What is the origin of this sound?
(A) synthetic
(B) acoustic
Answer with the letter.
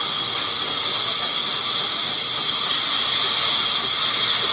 B